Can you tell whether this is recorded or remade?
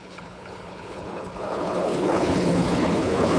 remade